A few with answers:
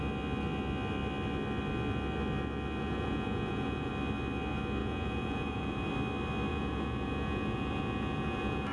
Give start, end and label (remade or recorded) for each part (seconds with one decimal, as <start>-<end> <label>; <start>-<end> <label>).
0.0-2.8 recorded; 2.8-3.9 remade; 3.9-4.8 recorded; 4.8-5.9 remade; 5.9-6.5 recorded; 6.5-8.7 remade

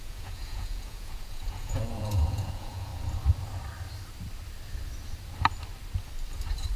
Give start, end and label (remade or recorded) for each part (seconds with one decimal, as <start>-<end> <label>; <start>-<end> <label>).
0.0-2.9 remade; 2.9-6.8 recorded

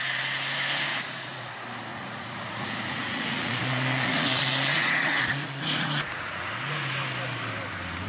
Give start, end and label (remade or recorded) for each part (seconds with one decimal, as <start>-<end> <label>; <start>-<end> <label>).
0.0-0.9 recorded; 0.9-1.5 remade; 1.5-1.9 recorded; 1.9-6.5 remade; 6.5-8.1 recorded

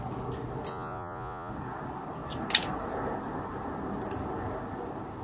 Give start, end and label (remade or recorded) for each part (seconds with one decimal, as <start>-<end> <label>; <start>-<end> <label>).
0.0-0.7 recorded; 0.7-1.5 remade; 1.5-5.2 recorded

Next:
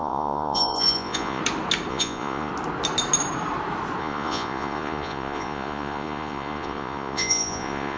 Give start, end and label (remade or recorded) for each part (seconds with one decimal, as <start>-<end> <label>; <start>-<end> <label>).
0.0-1.4 remade; 1.4-1.9 recorded; 1.9-2.5 remade; 2.5-4.0 recorded; 4.0-8.0 remade

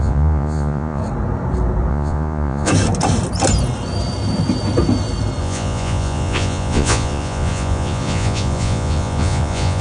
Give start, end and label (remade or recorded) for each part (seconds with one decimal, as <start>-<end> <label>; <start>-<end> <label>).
0.0-1.0 remade; 1.0-1.9 recorded; 1.9-2.7 remade; 2.7-5.4 recorded; 5.4-9.8 remade

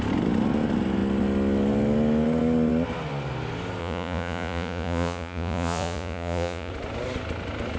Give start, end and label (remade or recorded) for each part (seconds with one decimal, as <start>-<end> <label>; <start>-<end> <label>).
0.0-3.8 recorded; 3.8-6.7 remade; 6.7-7.8 recorded

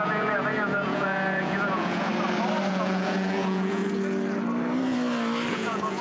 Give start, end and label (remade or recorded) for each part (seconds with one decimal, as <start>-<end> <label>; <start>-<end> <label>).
0.0-2.1 remade; 2.1-2.7 recorded; 2.7-3.8 remade; 3.8-5.5 recorded; 5.5-6.0 remade